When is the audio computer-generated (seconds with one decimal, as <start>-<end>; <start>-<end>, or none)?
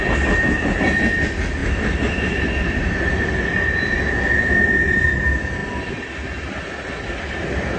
none